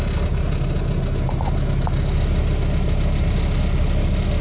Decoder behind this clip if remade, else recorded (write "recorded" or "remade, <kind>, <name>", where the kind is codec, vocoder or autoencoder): recorded